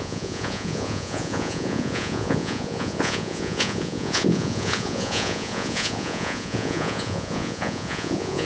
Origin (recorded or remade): remade